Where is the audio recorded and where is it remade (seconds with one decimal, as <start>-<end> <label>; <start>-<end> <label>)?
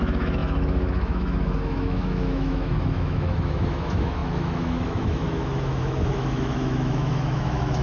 0.0-7.8 remade